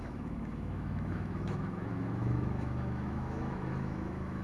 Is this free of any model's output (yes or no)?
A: no